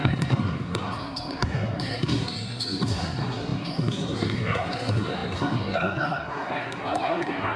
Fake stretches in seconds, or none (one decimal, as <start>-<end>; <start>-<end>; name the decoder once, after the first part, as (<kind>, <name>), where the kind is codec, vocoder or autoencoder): 0.0-7.6 (codec, SNAC)